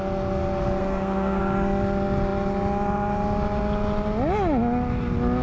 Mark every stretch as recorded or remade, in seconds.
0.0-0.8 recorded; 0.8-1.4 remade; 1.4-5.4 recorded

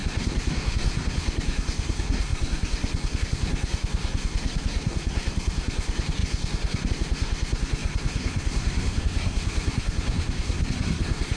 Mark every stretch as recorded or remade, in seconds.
0.0-11.4 remade